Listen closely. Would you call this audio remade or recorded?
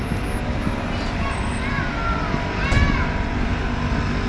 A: recorded